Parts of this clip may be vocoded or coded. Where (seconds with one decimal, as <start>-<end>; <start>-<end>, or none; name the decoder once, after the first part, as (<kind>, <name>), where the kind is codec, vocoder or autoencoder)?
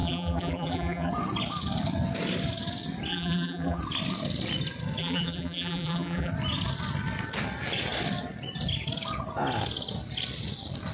0.0-1.1 (vocoder, BigVGAN v2); 3.1-3.8; 5.0-6.3